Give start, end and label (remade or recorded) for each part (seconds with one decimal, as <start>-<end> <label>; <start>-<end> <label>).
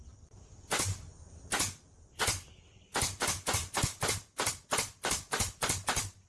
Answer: 0.0-6.3 recorded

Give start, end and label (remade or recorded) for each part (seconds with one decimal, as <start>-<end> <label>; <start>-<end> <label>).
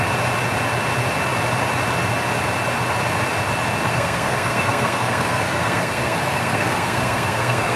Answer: 0.0-3.8 recorded; 3.8-7.8 remade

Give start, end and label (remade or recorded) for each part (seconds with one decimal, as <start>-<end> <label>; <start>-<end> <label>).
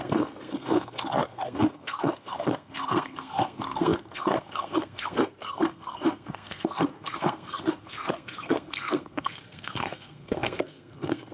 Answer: 0.0-11.3 remade